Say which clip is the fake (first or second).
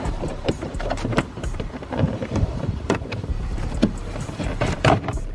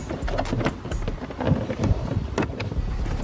first